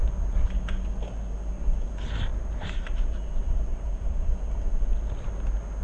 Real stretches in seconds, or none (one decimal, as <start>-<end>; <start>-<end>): 0.0-2.3; 2.9-3.7; 4.3-5.8